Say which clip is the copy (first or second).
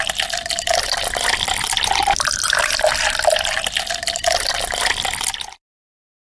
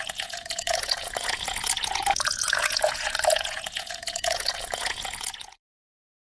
second